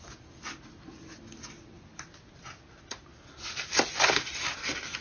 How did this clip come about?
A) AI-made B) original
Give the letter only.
B